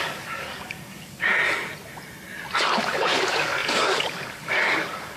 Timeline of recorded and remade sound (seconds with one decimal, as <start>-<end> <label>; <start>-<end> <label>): 0.0-1.4 remade; 1.4-2.8 recorded; 2.8-5.2 remade